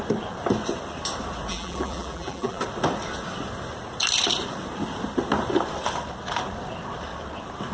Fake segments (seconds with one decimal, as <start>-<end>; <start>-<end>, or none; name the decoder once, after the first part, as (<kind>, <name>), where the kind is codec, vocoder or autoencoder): 1.5-2.6 (vocoder, BigVGAN v2)